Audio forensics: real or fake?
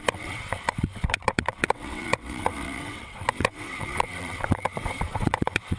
fake